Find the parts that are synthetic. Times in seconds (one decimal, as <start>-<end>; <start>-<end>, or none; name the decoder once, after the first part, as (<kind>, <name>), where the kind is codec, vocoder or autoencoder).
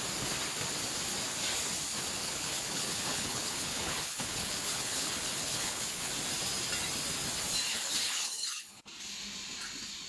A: 2.2-6.1 (codec, HILCodec); 7.7-8.8